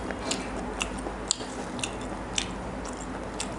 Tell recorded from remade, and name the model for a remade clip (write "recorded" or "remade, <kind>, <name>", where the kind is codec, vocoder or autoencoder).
recorded